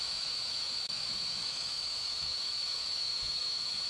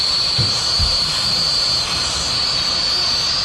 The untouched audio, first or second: second